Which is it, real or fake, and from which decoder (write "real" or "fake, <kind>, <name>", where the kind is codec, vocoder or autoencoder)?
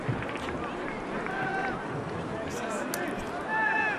real